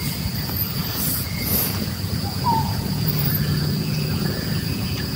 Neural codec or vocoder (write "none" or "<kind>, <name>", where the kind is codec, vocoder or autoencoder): vocoder, Vocos